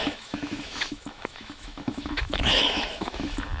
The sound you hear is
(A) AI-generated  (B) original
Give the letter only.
A